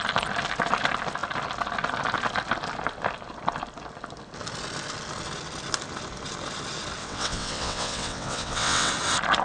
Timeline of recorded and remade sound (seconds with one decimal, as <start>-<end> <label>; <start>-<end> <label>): 0.0-7.0 recorded; 7.0-8.9 remade; 8.9-9.4 recorded